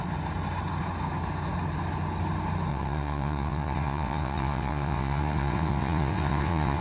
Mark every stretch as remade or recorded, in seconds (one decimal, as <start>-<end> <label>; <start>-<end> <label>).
0.0-2.7 recorded; 2.7-6.8 remade